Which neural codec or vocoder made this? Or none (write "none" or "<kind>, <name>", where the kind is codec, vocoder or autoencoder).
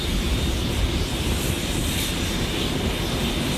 none